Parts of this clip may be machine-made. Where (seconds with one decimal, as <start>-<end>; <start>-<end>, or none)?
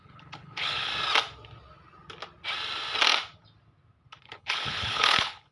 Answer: 0.0-0.9; 4.2-5.5